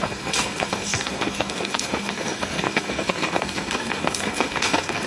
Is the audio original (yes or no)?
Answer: no